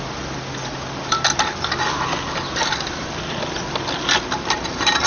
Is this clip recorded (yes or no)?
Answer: yes